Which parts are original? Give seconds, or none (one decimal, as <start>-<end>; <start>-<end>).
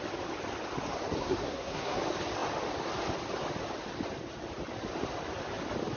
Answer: 0.0-1.2; 2.0-6.0